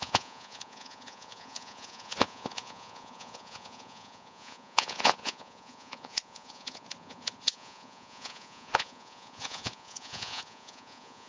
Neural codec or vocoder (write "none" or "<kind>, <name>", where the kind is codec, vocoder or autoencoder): vocoder, Vocos